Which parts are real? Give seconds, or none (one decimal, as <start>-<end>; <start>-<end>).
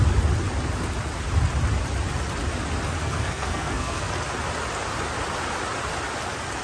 0.0-3.0; 4.1-6.6